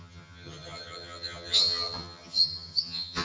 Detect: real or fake fake